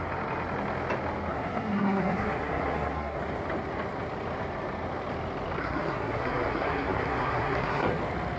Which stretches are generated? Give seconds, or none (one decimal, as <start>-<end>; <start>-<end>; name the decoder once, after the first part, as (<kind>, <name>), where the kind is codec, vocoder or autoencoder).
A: 1.3-3.2 (codec, SNAC); 5.6-8.0